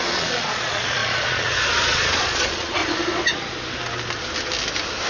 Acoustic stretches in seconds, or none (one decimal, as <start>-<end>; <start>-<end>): 2.8-5.1